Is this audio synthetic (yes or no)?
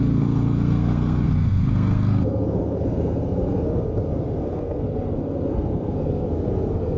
yes